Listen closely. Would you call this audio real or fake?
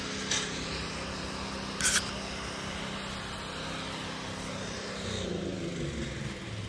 real